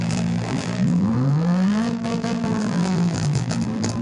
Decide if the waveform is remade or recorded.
remade